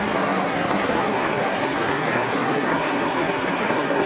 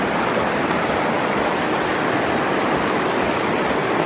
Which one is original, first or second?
second